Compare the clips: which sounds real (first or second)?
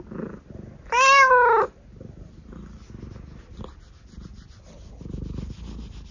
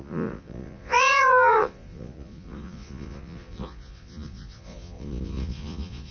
first